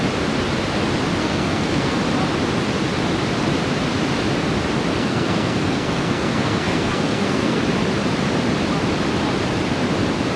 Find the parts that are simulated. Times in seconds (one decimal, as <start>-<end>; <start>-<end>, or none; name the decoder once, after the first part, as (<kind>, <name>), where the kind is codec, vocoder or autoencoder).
1.2-2.0 (codec, SNAC); 4.9-7.6